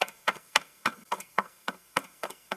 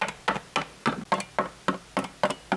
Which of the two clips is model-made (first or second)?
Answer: first